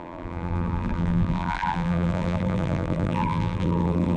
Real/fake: fake